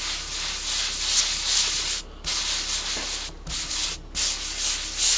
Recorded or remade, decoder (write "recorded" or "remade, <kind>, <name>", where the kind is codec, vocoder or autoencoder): recorded